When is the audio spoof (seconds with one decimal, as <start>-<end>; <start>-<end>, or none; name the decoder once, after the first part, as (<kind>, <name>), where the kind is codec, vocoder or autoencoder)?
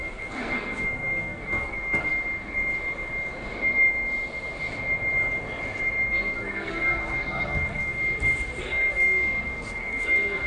0.0-2.1 (codec, SNAC); 6.1-8.0; 8.6-10.5